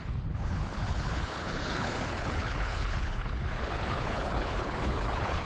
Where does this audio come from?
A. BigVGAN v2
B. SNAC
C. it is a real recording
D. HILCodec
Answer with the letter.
D